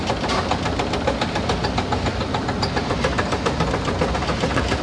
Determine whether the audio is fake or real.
real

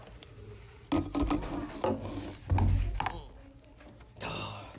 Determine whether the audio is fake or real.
real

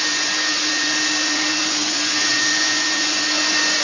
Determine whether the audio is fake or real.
fake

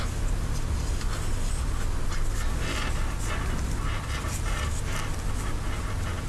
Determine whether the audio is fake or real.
real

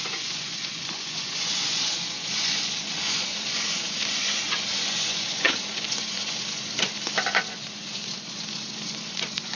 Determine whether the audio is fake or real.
fake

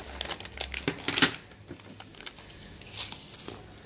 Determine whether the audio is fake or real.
real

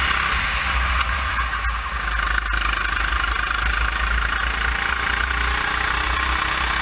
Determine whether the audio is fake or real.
real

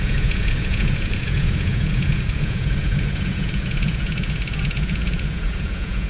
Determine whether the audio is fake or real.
fake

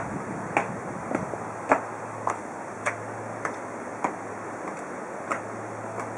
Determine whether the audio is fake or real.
real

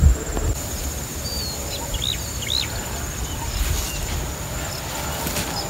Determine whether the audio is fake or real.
real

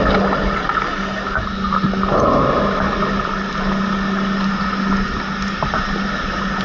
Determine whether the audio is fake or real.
real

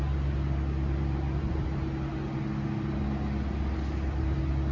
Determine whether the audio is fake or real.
real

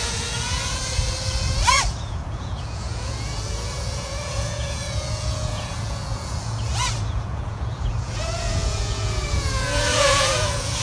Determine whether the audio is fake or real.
fake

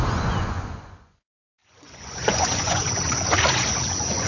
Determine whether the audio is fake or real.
fake